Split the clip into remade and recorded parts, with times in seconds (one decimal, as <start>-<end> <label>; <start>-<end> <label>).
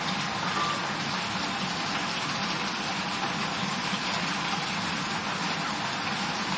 0.0-6.6 recorded